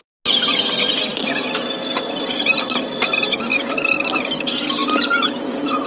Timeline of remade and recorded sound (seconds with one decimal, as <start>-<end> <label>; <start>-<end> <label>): 0.0-5.9 recorded